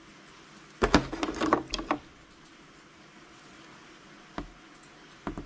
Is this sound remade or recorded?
recorded